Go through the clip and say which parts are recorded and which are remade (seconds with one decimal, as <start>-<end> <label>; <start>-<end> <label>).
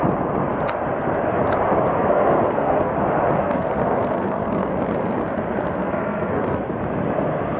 0.0-2.0 recorded; 2.0-2.9 remade; 2.9-3.4 recorded; 3.4-4.7 remade; 4.7-5.8 recorded; 5.8-6.6 remade; 6.6-7.6 recorded